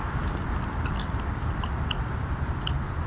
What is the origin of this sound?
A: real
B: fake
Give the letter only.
A